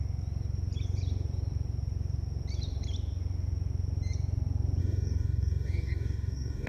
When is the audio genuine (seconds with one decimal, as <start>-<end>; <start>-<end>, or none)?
0.0-4.8